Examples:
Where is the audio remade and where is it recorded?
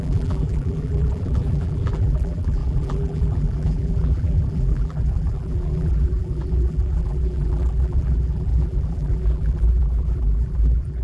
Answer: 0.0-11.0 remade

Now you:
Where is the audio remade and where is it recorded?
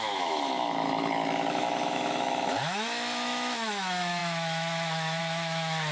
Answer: 0.0-5.9 remade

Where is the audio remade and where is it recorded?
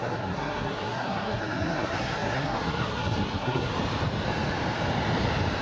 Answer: 0.0-3.7 remade; 3.7-5.6 recorded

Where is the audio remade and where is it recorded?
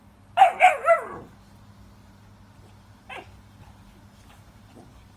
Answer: 0.0-0.6 remade; 0.6-5.2 recorded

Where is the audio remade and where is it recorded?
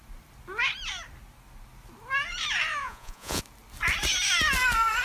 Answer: 0.0-2.8 recorded; 2.8-3.4 remade; 3.4-5.0 recorded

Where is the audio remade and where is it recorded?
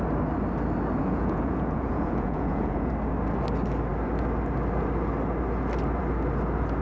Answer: 0.0-1.0 recorded; 1.0-2.9 remade; 2.9-6.8 recorded